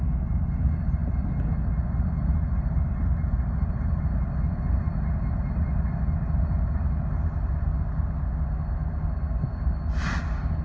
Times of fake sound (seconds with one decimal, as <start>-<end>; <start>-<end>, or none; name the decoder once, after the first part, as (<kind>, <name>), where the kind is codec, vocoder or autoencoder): none